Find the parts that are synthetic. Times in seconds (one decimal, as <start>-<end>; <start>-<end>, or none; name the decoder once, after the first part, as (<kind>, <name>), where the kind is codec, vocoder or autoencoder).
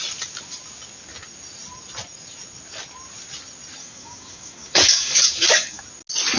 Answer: 3.8-5.8 (codec, DAC)